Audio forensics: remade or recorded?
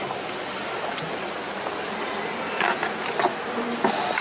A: recorded